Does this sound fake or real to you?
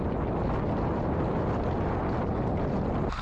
real